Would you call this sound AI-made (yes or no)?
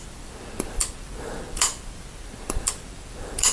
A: yes